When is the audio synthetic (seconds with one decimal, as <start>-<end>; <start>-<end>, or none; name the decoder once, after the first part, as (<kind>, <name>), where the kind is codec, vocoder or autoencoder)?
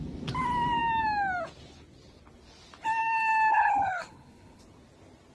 3.5-4.6 (codec, HILCodec)